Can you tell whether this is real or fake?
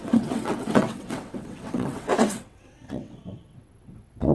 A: fake